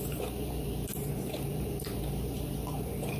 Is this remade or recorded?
remade